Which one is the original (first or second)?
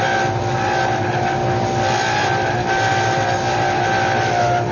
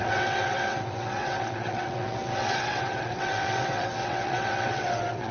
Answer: first